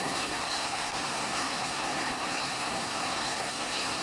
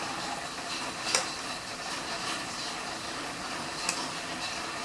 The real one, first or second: second